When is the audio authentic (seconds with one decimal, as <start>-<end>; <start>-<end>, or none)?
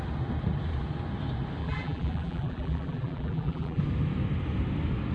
0.0-1.6; 3.8-5.1